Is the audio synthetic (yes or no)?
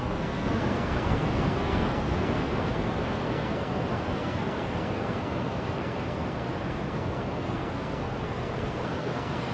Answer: yes